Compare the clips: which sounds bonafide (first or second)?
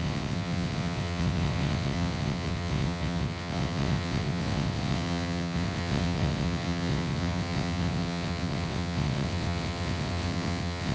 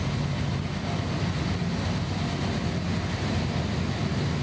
second